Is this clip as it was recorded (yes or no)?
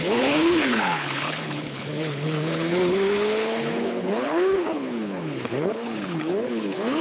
no